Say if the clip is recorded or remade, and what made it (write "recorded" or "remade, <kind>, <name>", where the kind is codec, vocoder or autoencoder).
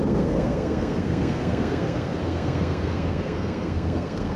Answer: remade, codec, SNAC